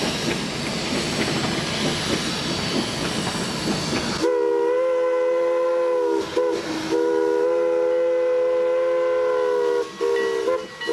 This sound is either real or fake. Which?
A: real